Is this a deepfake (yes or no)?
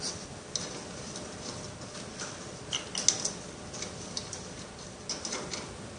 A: no